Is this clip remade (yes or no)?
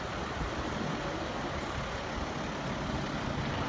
no